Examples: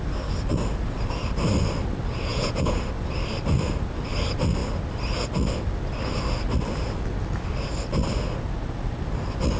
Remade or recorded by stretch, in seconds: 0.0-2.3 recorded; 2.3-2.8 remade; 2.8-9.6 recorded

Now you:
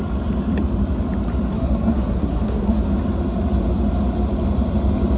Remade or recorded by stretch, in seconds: 0.0-1.5 recorded; 1.5-2.8 remade; 2.8-5.2 recorded

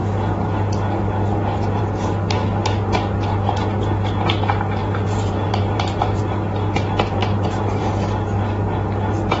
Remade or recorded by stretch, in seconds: 0.0-4.8 recorded; 4.8-6.2 remade; 6.2-7.2 recorded; 7.2-7.9 remade; 7.9-9.4 recorded